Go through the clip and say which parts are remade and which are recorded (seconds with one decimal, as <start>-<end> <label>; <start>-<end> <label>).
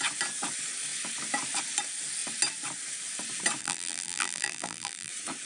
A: 0.0-3.6 recorded; 3.6-5.1 remade; 5.1-5.5 recorded